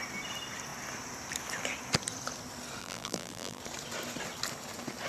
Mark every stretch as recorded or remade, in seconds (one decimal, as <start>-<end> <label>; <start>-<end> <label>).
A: 0.0-2.8 recorded; 2.8-3.6 remade; 3.6-5.1 recorded